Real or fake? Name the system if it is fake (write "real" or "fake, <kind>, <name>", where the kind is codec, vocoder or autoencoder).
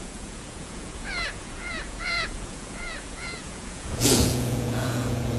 fake, vocoder, Vocos